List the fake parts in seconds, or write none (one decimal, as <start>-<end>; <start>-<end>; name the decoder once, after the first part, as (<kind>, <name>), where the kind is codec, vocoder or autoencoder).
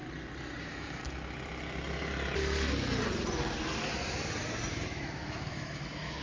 0.6-1.0 (autoencoder, DAC-VAE); 4.7-6.2